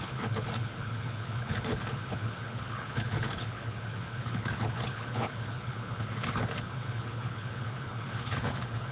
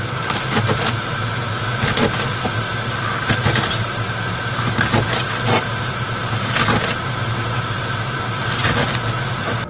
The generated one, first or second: first